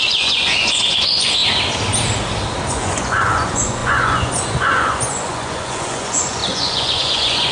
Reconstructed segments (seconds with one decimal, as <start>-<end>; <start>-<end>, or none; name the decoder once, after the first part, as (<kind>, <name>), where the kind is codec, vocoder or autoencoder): 0.0-1.4 (vocoder, Vocos); 2.7-7.5